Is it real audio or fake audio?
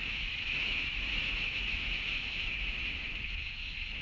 fake